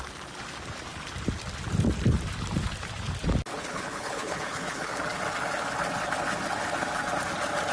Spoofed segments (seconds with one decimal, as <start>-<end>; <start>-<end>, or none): 3.5-5.0